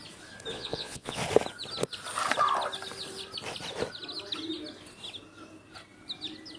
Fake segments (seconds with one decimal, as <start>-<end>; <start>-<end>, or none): 0.5-1.2